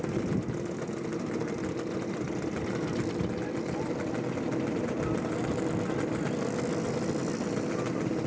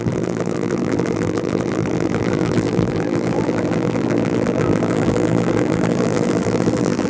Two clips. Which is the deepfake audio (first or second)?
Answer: second